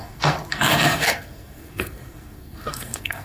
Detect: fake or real fake